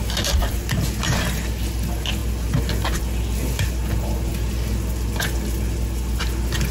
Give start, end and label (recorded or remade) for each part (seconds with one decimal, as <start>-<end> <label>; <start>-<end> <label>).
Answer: 0.0-6.7 recorded